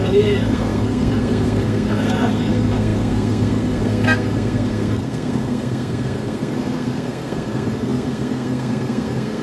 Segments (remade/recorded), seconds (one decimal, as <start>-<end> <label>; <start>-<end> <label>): 0.0-9.4 remade